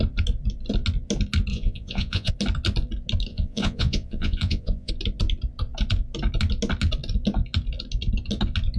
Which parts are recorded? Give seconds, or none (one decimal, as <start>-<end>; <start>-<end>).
0.0-1.5; 2.3-3.3; 4.9-8.8